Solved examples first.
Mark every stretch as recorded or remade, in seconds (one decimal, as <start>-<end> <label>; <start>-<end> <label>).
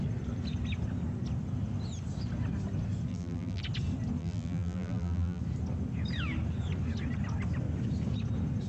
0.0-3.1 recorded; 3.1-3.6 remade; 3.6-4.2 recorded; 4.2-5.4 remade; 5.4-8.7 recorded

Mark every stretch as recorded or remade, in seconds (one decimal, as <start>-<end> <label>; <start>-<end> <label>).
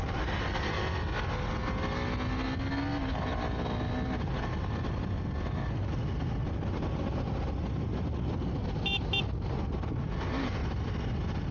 0.0-11.5 recorded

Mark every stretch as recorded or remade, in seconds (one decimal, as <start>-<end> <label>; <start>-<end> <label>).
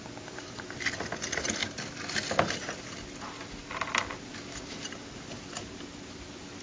0.0-6.6 recorded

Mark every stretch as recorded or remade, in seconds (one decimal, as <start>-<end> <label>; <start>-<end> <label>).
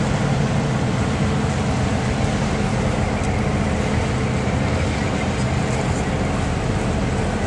0.0-7.5 recorded